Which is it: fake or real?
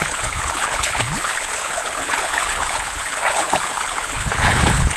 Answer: fake